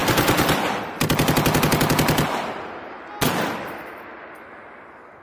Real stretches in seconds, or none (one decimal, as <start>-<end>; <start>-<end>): 0.0-5.2